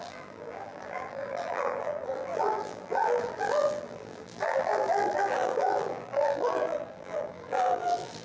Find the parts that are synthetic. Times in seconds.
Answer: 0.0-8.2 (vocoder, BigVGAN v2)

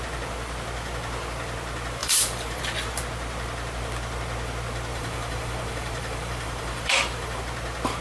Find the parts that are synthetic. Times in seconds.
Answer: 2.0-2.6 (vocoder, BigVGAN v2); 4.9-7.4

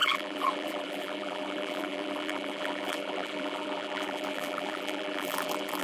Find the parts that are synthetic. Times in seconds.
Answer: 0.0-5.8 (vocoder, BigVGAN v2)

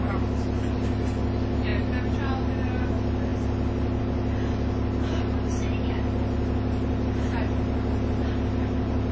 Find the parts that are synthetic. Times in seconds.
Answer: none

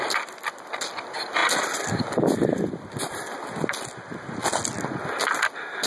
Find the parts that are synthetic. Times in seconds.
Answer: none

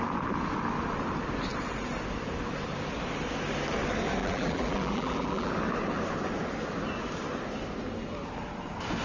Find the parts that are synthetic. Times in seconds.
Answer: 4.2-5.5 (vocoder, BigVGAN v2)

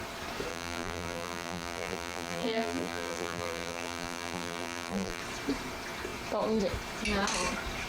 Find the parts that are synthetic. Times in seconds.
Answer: 0.5-5.2 (vocoder, BigVGAN v2)

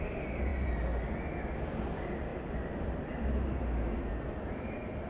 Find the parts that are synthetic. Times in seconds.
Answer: none